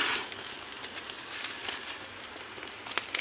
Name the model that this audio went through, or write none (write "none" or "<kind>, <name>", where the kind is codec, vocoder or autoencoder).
none